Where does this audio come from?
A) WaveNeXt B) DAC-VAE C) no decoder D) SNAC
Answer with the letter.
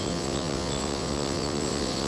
A